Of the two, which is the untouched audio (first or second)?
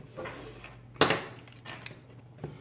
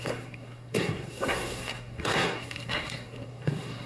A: first